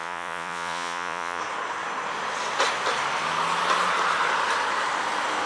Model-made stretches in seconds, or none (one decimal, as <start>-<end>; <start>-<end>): 0.0-1.4